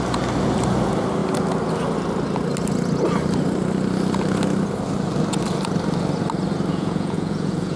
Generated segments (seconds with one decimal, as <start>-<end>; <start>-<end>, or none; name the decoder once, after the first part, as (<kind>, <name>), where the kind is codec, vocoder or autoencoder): 6.7-7.8 (vocoder, Vocos)

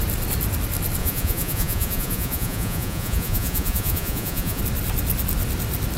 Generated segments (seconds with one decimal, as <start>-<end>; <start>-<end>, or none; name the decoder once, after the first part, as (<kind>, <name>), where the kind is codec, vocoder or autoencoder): 1.0-4.6 (vocoder, Vocos)